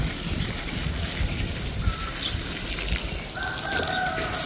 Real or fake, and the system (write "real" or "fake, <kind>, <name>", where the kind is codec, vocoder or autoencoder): real